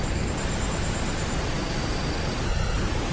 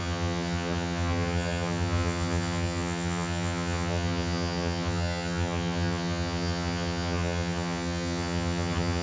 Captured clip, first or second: first